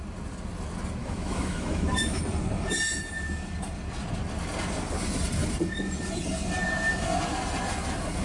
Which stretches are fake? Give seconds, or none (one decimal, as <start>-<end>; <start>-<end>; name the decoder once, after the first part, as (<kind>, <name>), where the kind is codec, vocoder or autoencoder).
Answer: 1.0-2.2 (autoencoder, DAC-VAE)